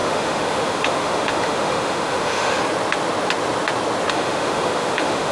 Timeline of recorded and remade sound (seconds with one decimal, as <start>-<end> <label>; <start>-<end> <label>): 0.0-2.6 remade; 2.6-4.1 recorded; 4.1-5.3 remade